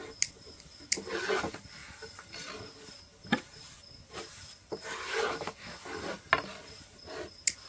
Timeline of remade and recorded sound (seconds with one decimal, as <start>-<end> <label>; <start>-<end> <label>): 0.0-7.7 recorded